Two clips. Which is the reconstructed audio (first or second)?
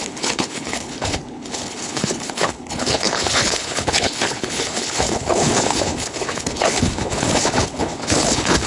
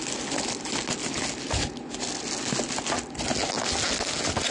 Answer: first